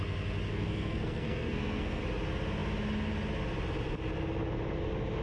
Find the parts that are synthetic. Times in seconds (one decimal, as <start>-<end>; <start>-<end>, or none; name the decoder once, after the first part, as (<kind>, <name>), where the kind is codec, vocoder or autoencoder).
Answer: 0.5-2.0 (codec, SNAC)